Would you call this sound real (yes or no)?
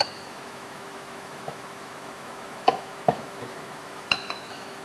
no